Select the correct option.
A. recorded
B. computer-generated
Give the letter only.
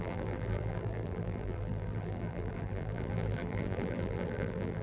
B